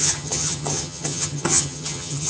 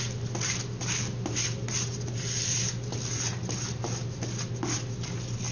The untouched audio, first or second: second